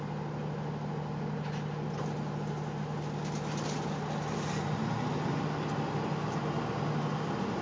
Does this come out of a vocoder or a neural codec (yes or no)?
no